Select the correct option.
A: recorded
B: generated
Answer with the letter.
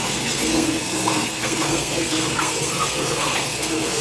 B